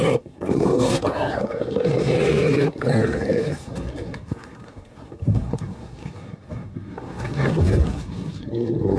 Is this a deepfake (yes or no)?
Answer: yes